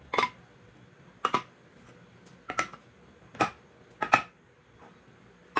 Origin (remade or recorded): recorded